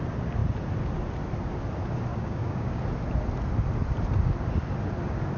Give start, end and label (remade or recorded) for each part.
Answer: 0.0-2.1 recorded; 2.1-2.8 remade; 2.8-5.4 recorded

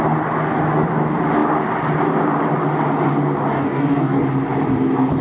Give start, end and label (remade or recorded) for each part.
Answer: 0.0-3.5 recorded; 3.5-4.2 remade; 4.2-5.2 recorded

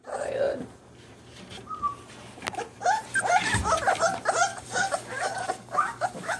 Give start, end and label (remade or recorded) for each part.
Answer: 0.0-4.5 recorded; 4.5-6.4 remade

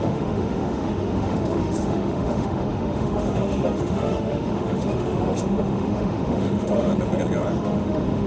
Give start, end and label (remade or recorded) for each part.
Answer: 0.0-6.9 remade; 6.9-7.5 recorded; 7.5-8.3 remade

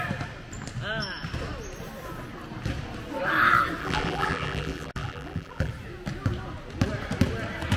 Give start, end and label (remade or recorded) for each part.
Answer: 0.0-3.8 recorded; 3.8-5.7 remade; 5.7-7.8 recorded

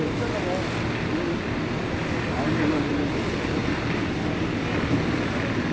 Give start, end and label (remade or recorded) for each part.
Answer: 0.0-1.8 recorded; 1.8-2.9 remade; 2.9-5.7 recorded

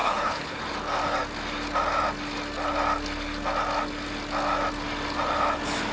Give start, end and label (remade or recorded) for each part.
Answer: 0.0-0.6 remade; 0.6-5.9 recorded

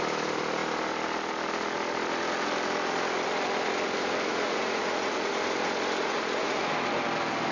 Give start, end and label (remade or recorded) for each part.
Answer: 0.0-4.3 recorded; 4.3-5.3 remade; 5.3-6.0 recorded; 6.0-6.6 remade; 6.6-7.5 recorded